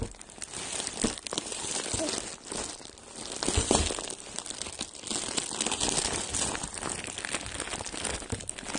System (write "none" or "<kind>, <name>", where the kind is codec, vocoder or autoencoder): none